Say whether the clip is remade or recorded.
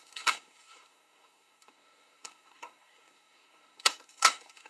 remade